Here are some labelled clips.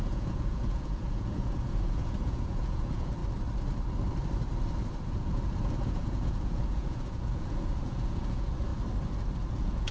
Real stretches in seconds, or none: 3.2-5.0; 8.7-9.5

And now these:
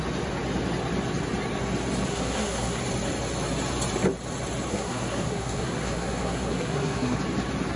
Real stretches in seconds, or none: 0.0-2.1; 2.8-4.7; 7.2-7.8

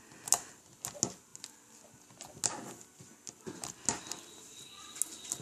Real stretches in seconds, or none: 0.0-5.4